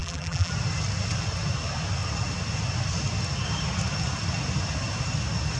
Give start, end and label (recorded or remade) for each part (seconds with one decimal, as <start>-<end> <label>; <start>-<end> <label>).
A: 0.0-0.5 remade; 0.5-5.6 recorded

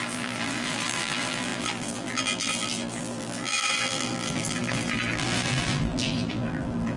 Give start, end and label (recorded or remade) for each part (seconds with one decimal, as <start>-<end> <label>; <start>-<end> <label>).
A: 0.0-7.0 remade

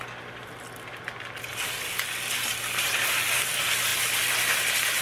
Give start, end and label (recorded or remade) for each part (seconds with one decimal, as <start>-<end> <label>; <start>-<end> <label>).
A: 0.0-2.8 remade; 2.8-3.9 recorded; 3.9-5.0 remade

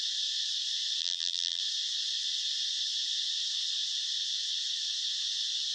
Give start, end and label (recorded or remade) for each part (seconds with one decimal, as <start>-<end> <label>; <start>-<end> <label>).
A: 0.0-1.0 recorded; 1.0-1.6 remade; 1.6-5.7 recorded

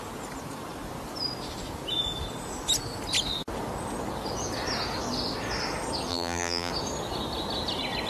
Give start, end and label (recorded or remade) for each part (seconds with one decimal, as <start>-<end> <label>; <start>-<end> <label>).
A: 0.0-6.1 recorded; 6.1-6.7 remade; 6.7-8.1 recorded